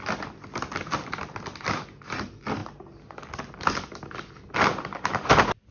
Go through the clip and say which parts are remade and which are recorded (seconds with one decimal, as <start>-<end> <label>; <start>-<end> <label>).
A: 0.0-5.7 recorded